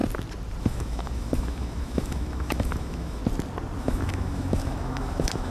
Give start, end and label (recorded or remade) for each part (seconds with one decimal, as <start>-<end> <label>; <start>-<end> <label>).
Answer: 0.0-0.6 recorded; 0.6-3.2 remade; 3.2-3.8 recorded; 3.8-5.5 remade